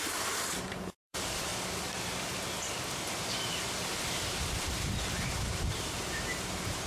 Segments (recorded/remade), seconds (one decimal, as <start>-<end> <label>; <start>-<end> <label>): 0.0-1.5 remade; 1.5-4.7 recorded; 4.7-6.9 remade